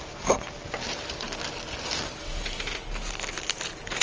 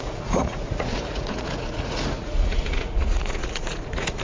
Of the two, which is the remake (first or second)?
second